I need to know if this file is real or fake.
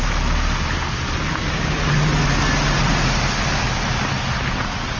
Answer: real